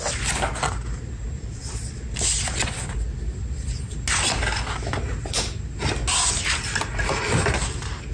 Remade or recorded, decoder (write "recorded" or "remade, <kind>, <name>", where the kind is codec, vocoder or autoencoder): recorded